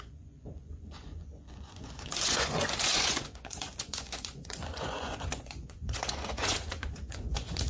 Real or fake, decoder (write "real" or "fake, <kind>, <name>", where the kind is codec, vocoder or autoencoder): fake, vocoder, Vocos